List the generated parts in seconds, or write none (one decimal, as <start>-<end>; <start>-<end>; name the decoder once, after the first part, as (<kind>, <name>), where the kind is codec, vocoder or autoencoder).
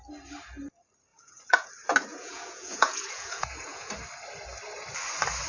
1.1-1.7 (vocoder, Vocos); 2.1-3.9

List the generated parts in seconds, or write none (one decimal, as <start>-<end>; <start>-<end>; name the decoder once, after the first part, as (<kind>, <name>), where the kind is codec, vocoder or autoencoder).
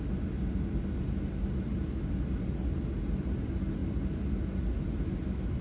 none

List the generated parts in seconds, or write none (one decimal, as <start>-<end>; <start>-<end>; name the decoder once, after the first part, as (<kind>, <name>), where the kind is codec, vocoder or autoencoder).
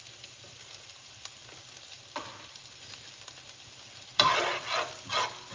none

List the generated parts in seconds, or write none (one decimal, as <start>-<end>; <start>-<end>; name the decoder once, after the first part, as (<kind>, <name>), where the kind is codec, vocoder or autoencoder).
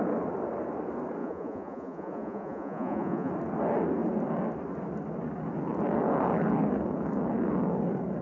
1.2-3.3 (vocoder, Vocos)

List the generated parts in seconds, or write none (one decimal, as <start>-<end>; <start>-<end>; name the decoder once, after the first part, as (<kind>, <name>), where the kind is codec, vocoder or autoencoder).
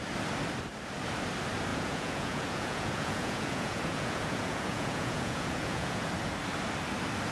1.7-6.1 (vocoder, Vocos)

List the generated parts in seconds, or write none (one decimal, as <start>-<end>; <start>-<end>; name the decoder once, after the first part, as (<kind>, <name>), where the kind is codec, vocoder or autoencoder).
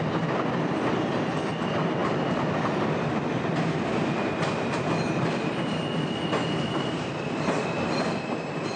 none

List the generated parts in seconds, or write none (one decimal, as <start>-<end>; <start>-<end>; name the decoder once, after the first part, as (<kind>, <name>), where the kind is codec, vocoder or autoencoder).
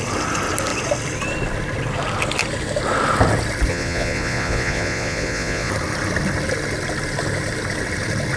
3.7-5.7 (vocoder, Vocos)